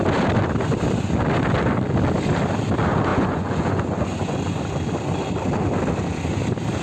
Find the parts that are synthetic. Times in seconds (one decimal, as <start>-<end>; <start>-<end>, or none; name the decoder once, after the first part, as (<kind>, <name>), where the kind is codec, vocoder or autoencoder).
3.1-4.6 (vocoder, Vocos)

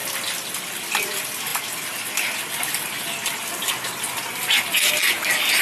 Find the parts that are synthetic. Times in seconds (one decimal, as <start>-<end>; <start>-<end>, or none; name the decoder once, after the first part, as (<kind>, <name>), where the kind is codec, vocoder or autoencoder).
none

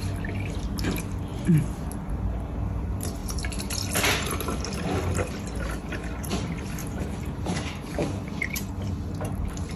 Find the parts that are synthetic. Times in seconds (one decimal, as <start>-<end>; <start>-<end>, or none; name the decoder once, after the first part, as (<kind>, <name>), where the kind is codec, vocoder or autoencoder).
6.8-8.7 (vocoder, BigVGAN v2)

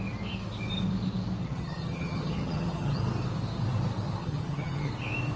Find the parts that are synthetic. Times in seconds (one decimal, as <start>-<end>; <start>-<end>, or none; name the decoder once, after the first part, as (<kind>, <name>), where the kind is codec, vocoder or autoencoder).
1.4-3.0 (vocoder, HiFi-GAN); 4.2-4.9